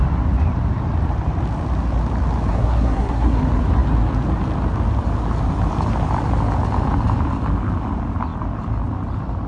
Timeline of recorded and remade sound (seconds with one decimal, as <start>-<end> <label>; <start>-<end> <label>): 0.0-2.5 recorded; 2.5-3.4 remade; 3.4-9.5 recorded